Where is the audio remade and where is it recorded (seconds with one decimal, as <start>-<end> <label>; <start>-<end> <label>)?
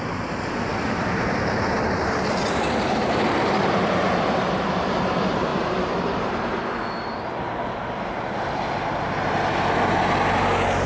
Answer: 0.0-0.7 recorded; 0.7-4.1 remade; 4.1-5.5 recorded; 5.5-6.3 remade; 6.3-10.9 recorded